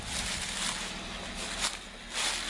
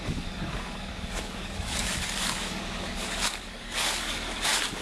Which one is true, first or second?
first